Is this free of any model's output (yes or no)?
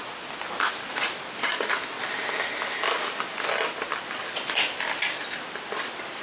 yes